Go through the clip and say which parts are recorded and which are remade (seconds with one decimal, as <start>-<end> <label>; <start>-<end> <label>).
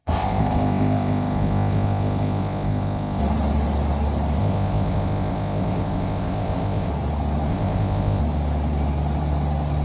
0.0-3.2 remade; 3.2-4.4 recorded; 4.4-6.9 remade; 6.9-7.5 recorded; 7.5-8.2 remade; 8.2-9.8 recorded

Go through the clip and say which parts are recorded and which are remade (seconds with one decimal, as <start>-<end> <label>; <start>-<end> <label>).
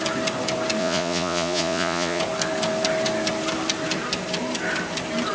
0.0-0.8 recorded; 0.8-2.2 remade; 2.2-5.3 recorded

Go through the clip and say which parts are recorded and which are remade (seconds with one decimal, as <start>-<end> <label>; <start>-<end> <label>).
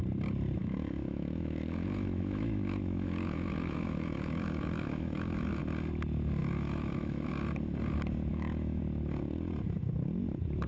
0.0-0.6 recorded; 0.6-5.6 remade; 5.6-6.4 recorded; 6.4-7.3 remade; 7.3-8.3 recorded; 8.3-8.8 remade; 8.8-10.7 recorded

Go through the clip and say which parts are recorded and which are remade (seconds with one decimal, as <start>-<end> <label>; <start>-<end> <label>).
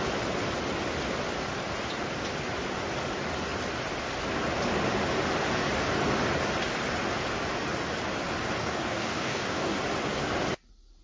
0.0-8.6 recorded; 8.6-9.8 remade; 9.8-11.0 recorded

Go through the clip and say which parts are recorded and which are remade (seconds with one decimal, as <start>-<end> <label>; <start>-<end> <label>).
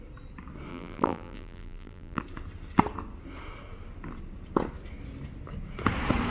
0.0-0.7 recorded; 0.7-2.2 remade; 2.2-6.3 recorded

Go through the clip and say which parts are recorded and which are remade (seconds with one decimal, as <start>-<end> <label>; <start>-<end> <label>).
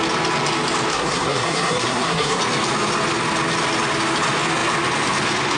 0.0-0.9 recorded; 0.9-2.4 remade; 2.4-5.6 recorded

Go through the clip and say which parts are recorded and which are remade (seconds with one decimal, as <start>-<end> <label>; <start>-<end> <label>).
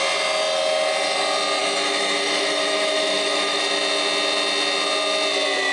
0.0-1.6 recorded; 1.6-3.6 remade; 3.6-5.7 recorded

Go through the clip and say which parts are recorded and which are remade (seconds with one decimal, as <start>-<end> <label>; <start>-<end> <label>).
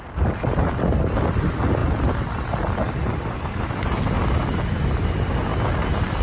0.0-6.2 recorded